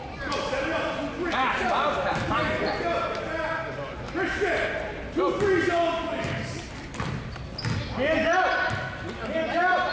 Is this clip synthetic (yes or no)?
no